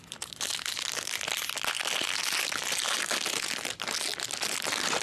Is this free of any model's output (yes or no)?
yes